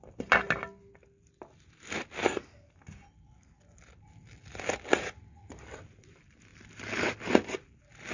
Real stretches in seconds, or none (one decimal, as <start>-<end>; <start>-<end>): 0.0-8.1